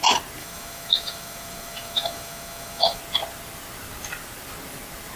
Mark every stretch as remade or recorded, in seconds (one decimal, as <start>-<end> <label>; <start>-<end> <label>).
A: 0.0-0.4 recorded; 0.4-3.0 remade; 3.0-5.2 recorded